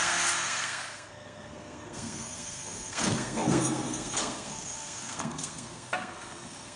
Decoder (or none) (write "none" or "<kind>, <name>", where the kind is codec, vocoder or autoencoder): codec, SNAC